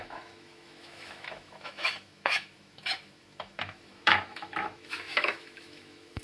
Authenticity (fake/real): fake